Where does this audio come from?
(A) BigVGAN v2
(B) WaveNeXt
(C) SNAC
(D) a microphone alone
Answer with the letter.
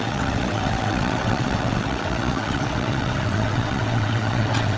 B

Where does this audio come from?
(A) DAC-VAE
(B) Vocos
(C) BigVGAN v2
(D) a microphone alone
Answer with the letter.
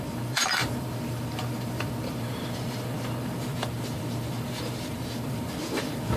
C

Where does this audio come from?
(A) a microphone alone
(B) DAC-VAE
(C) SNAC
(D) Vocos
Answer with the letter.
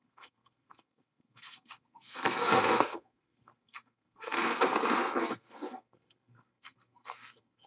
C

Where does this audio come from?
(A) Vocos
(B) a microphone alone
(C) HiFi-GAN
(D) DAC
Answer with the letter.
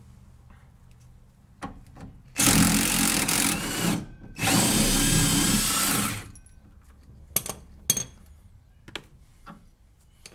B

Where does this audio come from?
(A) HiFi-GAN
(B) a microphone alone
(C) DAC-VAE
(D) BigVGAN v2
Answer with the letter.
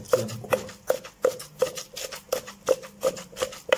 B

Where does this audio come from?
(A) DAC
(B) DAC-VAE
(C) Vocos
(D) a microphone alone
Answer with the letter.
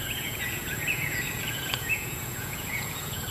C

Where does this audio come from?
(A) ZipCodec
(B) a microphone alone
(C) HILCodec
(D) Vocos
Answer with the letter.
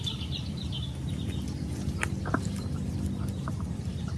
B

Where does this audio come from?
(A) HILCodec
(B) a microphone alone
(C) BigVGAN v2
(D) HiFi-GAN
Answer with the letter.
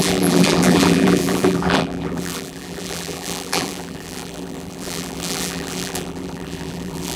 C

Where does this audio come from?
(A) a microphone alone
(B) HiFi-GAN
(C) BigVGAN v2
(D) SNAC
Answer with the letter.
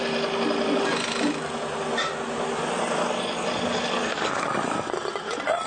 A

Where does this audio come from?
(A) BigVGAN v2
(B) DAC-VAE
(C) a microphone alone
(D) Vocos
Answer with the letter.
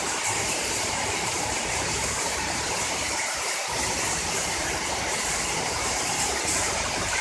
A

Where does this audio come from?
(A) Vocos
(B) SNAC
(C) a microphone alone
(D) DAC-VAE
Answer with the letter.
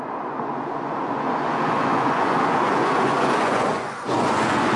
A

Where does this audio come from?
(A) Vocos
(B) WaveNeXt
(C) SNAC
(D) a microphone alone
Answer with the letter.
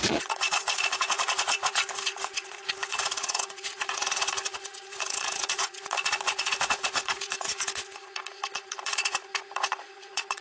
A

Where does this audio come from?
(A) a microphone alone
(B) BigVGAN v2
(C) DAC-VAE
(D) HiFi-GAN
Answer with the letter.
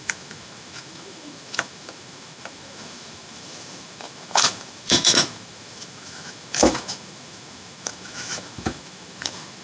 C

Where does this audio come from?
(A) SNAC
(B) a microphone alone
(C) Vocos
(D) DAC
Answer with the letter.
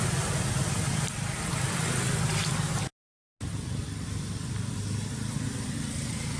B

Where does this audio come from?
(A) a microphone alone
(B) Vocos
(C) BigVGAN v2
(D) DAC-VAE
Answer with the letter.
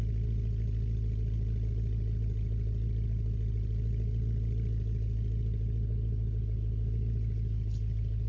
A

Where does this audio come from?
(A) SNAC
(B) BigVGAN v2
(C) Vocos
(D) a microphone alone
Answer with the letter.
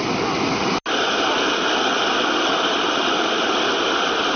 D